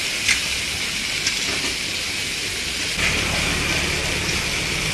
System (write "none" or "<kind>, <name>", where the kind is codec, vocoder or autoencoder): none